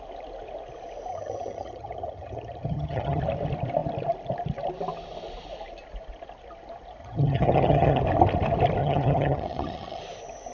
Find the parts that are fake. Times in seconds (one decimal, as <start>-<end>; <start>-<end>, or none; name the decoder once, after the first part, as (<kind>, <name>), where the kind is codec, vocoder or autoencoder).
1.1-3.2 (vocoder, HiFi-GAN); 7.0-8.0; 8.8-10.0